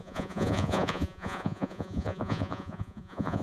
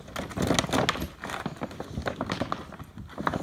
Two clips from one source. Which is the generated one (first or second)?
first